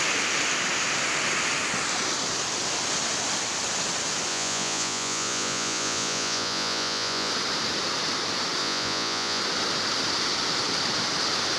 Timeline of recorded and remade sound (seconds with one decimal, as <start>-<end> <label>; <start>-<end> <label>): 0.0-4.3 recorded; 4.3-7.3 remade; 7.3-8.6 recorded; 8.6-9.4 remade; 9.4-11.6 recorded